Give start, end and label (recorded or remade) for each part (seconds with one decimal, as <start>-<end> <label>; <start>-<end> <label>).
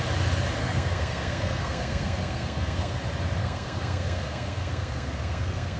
0.0-0.6 recorded; 0.6-3.0 remade; 3.0-3.4 recorded; 3.4-5.8 remade